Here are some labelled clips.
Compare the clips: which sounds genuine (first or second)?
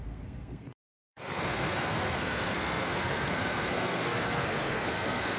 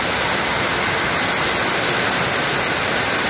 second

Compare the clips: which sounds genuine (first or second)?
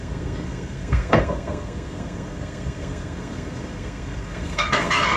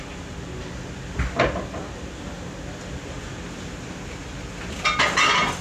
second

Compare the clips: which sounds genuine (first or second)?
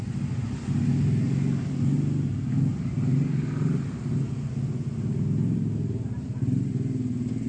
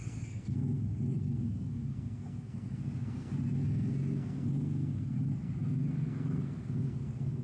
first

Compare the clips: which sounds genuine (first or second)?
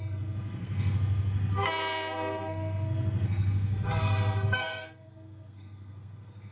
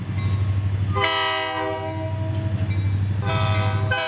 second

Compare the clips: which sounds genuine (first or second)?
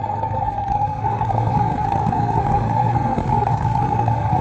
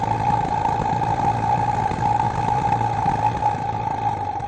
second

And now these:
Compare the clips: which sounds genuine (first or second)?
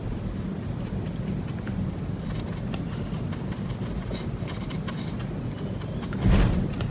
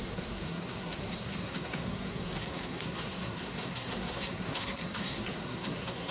first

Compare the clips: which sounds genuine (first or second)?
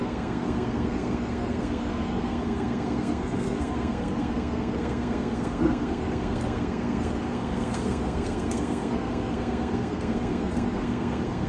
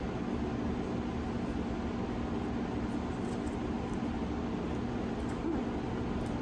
second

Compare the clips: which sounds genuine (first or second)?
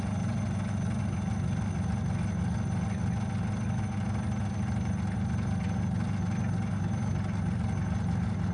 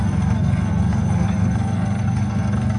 first